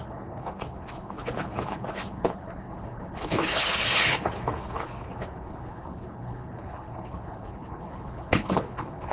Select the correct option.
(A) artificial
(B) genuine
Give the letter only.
A